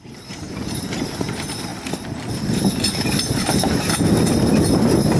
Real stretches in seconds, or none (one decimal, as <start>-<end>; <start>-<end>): none